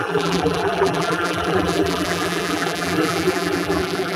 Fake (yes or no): yes